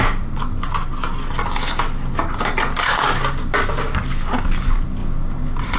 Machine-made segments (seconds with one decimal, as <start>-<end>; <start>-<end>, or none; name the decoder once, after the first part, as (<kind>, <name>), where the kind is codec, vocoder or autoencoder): none